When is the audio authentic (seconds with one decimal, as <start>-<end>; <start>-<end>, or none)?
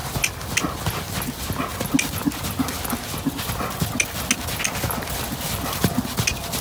0.0-6.6